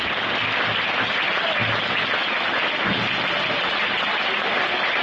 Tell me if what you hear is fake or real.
real